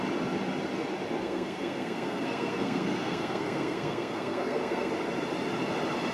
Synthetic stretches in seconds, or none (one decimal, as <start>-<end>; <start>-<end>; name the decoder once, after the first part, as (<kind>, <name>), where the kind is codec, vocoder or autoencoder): 1.2-4.9 (codec, SNAC)